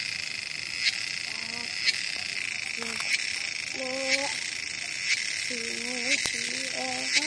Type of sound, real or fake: real